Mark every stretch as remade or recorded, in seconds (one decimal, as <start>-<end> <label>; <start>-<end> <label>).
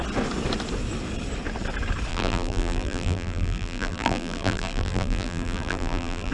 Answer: 0.0-2.1 recorded; 2.1-6.3 remade